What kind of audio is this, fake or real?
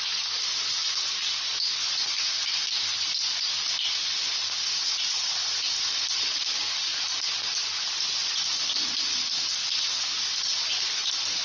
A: real